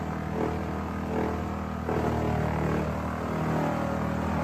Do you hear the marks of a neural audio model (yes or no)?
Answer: no